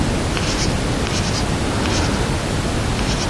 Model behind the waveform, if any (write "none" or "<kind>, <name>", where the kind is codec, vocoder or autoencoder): none